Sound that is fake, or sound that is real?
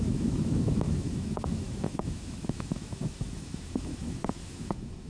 fake